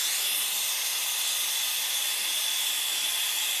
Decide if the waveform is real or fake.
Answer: real